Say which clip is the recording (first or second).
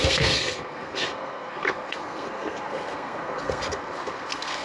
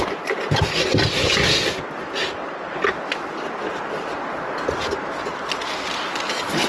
second